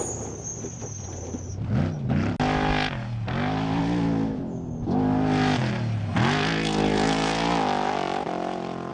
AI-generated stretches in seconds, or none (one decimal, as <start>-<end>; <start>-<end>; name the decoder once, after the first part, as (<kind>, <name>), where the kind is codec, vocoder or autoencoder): none